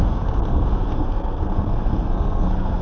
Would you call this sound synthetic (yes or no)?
yes